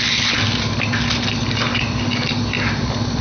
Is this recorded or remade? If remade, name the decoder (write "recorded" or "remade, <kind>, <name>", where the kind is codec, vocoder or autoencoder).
recorded